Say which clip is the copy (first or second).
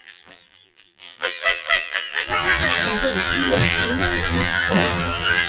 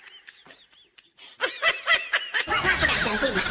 first